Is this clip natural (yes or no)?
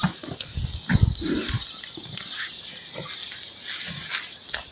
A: yes